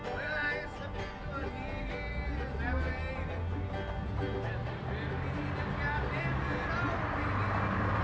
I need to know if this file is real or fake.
real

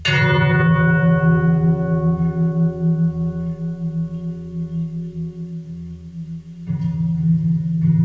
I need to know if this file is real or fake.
real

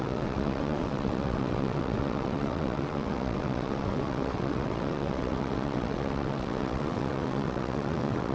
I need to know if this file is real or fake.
fake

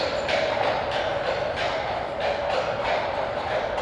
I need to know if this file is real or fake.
real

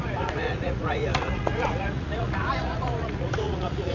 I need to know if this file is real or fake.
fake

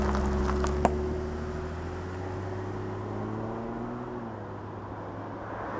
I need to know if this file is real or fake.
real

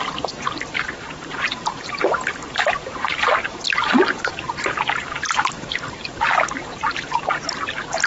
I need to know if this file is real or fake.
fake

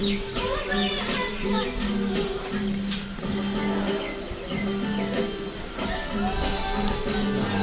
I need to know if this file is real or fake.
real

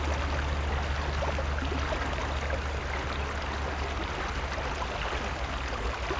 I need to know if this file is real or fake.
real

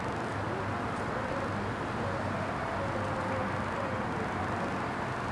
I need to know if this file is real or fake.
real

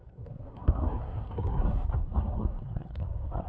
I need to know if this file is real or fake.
fake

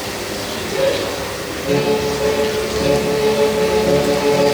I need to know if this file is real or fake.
real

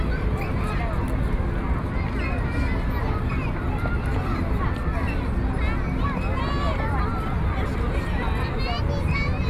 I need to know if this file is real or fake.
real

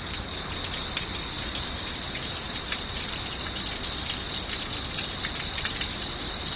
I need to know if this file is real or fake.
real